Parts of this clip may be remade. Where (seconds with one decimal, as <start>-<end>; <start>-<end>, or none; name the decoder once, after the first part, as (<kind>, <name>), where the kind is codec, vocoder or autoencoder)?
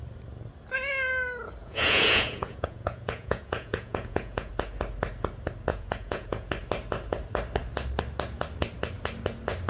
1.6-4.5 (vocoder, Vocos); 5.7-6.5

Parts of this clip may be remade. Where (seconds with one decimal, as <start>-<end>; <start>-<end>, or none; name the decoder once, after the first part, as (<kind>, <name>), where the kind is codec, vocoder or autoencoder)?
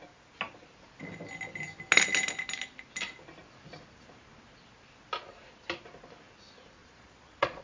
6.8-7.6 (vocoder, Vocos)